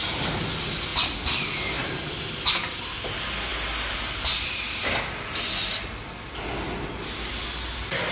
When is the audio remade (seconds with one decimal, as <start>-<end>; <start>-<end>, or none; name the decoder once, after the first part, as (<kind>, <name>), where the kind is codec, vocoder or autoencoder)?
none